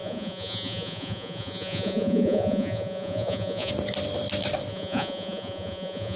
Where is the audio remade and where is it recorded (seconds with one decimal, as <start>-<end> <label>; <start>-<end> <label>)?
0.0-3.7 remade; 3.7-4.7 recorded; 4.7-6.2 remade

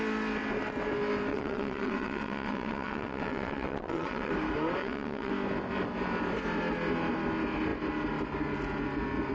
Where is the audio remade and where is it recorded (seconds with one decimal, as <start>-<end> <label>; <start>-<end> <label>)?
0.0-1.3 recorded; 1.3-4.3 remade; 4.3-4.8 recorded; 4.8-5.3 remade; 5.3-9.3 recorded

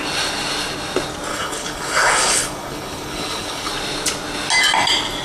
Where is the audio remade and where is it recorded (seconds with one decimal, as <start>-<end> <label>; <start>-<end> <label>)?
0.0-1.3 recorded; 1.3-3.7 remade; 3.7-5.2 recorded

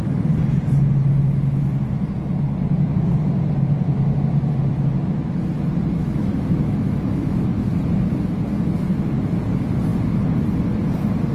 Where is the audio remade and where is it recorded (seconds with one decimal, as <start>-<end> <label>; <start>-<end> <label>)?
0.0-6.0 recorded; 6.0-7.7 remade; 7.7-11.3 recorded

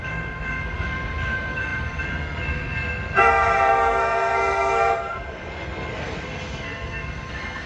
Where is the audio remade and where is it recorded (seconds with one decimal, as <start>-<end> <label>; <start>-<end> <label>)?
0.0-7.7 remade

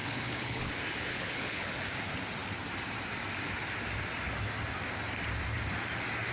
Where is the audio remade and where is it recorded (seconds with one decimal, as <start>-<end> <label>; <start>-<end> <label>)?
0.0-0.7 remade; 0.7-1.1 recorded; 1.1-1.7 remade; 1.7-6.3 recorded

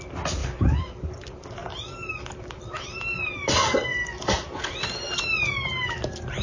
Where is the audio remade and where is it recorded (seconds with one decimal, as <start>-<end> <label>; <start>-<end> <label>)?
0.0-1.6 recorded; 1.6-3.2 remade; 3.2-3.9 recorded; 3.9-4.6 remade; 4.6-6.4 recorded

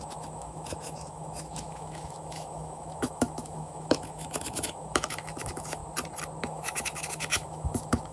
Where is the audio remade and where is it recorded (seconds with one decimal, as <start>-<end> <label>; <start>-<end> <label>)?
0.0-5.8 remade; 5.8-6.4 recorded; 6.4-8.1 remade